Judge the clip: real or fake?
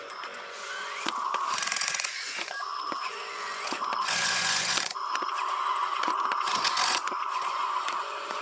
fake